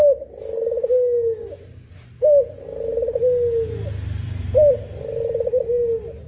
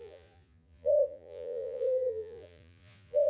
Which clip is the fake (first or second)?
second